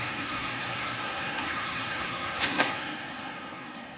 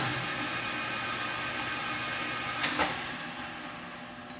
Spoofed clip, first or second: first